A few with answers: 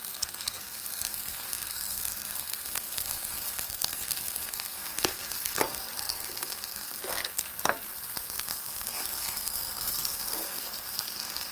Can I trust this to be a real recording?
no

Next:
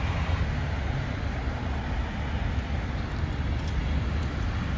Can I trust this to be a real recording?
yes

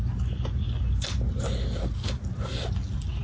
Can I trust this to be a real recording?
yes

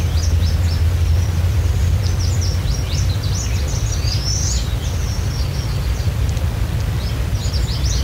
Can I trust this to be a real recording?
yes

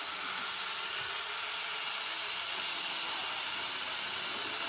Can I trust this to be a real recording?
yes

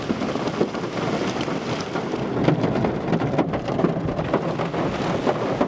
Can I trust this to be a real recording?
yes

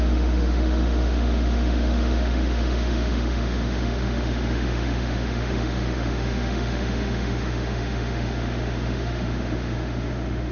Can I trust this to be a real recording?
no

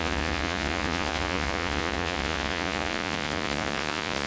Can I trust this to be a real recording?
no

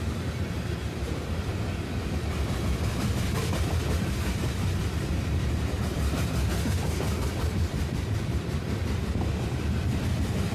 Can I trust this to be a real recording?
no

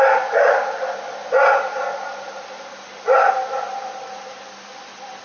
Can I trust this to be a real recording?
yes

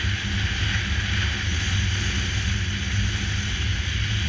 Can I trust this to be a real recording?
yes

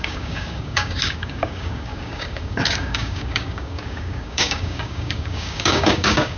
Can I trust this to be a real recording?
no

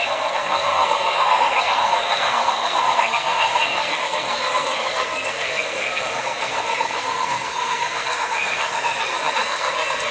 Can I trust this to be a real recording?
no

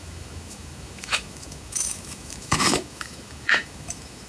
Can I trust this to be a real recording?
no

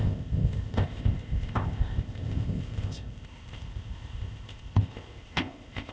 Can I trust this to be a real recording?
no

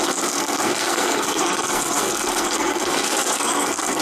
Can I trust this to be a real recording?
no